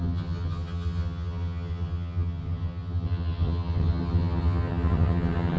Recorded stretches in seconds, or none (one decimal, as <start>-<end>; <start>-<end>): none